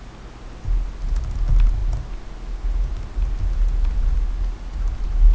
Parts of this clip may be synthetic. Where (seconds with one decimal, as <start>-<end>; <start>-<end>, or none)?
none